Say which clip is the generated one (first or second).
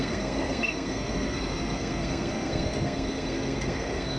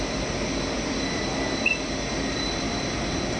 first